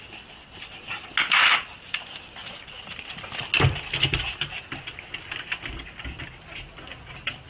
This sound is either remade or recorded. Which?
recorded